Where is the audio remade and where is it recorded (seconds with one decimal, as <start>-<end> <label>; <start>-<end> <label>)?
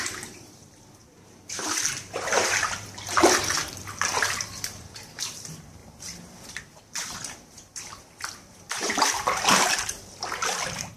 0.0-11.0 remade